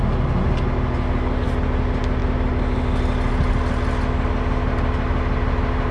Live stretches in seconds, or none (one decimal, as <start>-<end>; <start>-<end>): 0.0-5.9